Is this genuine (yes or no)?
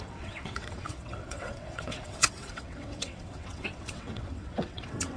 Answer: no